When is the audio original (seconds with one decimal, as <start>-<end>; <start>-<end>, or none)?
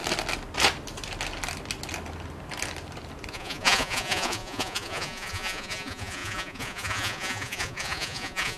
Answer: 0.0-3.3